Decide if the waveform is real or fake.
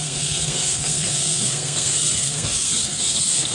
fake